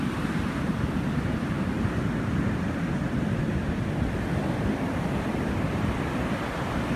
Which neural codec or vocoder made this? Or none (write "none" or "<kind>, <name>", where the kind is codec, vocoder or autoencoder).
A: none